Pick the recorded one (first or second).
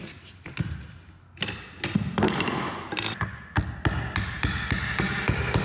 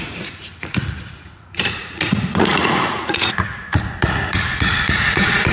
first